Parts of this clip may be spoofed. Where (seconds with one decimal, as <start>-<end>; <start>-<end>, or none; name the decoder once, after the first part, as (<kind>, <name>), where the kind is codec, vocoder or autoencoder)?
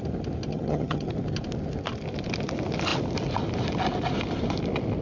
0.5-1.1 (vocoder, HiFi-GAN)